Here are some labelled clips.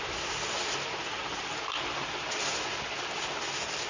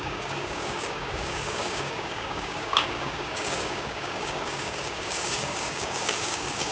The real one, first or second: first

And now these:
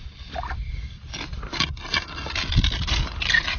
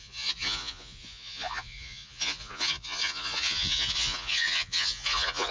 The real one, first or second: first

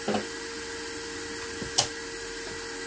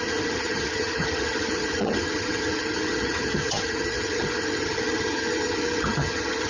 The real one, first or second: first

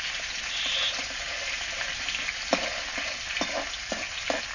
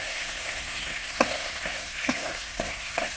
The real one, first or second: first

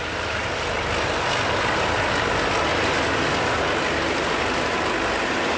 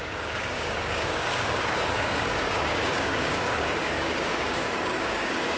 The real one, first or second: first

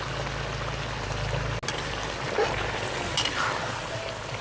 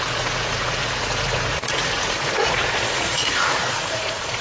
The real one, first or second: first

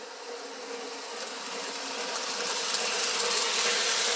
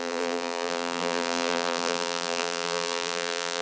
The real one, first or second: first